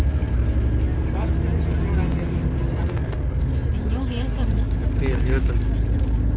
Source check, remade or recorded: recorded